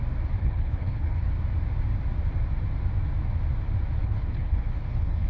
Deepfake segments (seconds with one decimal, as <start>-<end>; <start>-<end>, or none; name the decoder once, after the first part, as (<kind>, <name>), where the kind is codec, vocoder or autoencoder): 0.4-1.3 (codec, HILCodec); 4.0-5.3